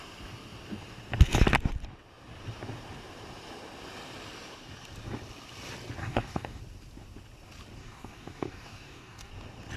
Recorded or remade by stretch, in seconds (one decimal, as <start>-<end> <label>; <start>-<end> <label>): 0.0-6.0 recorded; 6.0-6.6 remade; 6.6-7.8 recorded; 7.8-9.3 remade; 9.3-9.8 recorded